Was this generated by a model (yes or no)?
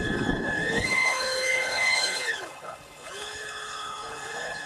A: yes